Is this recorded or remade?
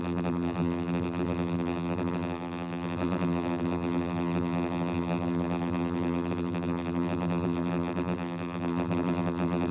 remade